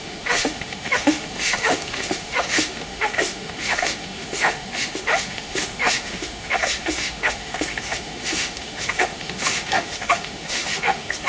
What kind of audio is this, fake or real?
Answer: fake